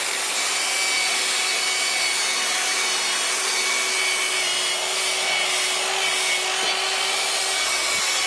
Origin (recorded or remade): recorded